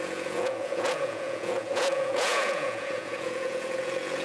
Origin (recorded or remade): remade